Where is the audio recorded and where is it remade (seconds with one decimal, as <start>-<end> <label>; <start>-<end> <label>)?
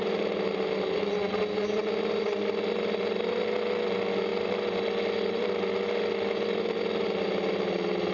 0.0-8.1 recorded